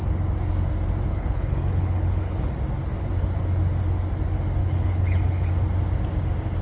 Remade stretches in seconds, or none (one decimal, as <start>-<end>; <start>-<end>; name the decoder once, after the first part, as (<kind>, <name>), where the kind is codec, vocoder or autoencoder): 1.1-2.5 (codec, HILCodec); 4.6-5.5

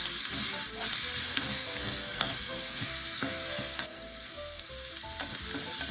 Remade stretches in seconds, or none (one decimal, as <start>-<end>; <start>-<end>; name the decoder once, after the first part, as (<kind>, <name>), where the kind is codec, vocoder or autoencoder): 1.2-4.7 (codec, SNAC)

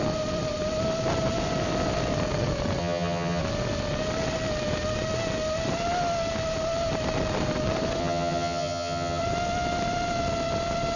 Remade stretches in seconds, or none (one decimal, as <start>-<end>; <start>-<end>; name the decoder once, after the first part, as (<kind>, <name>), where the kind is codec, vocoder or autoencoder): 2.8-3.4 (vocoder, HiFi-GAN); 8.0-9.2

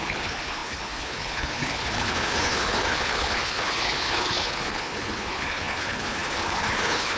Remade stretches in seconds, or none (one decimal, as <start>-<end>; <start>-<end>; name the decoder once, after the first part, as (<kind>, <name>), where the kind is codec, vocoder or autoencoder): 0.0-7.2 (codec, HILCodec)

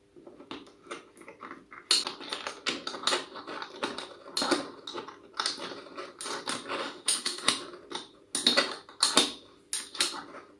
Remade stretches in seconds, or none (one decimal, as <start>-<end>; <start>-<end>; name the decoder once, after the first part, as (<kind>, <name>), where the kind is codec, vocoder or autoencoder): 6.8-7.5 (autoencoder, DAC-VAE)

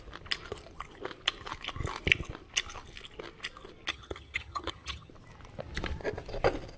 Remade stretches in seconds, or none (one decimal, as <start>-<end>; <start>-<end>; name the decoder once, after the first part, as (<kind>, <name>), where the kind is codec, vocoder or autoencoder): 3.9-5.1 (vocoder, HiFi-GAN)

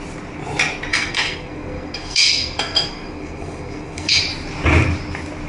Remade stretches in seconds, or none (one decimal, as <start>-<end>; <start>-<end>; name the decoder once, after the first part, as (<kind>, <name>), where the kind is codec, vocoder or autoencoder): 0.9-4.2 (codec, SNAC)

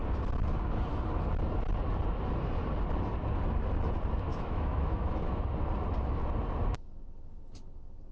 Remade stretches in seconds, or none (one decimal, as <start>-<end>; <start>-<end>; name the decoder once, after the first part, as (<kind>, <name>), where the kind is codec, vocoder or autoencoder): 4.3-5.4 (autoencoder, DAC-VAE)